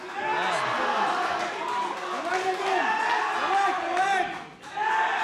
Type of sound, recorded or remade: recorded